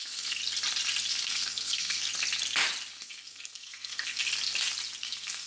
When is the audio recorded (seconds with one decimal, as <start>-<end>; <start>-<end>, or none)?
0.4-1.1; 2.1-2.9; 4.2-5.0